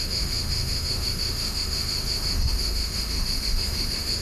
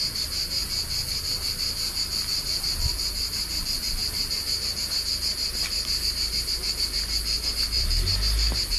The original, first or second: second